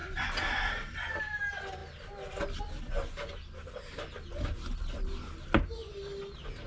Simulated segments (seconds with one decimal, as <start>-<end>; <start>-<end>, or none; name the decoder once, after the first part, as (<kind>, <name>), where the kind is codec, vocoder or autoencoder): none